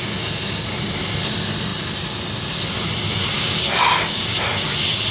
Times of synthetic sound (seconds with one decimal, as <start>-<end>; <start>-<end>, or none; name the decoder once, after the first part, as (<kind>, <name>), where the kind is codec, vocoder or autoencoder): none